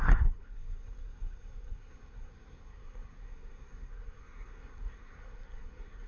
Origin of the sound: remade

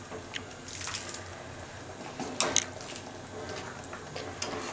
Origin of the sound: recorded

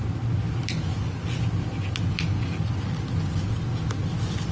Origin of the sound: recorded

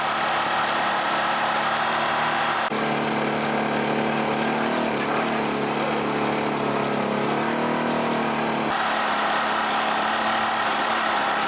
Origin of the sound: recorded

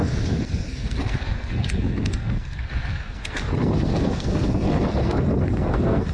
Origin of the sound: remade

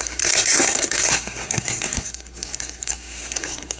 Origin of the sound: remade